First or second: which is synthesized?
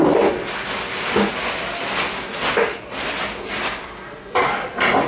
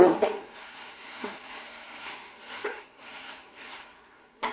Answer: second